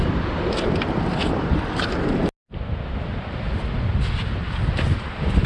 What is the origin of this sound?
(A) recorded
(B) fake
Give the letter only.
A